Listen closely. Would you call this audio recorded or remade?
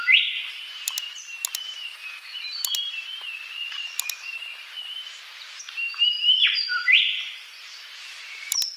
remade